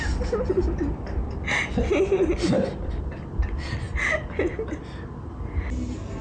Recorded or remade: recorded